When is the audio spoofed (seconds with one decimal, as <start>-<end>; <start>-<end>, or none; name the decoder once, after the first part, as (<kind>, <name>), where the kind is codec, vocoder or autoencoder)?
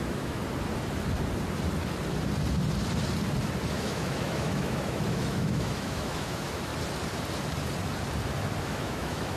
0.0-0.4 (autoencoder, DAC-VAE); 3.7-6.7; 8.6-9.4